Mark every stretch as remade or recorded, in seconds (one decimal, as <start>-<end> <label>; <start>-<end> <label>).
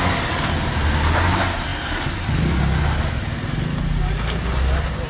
0.0-5.1 recorded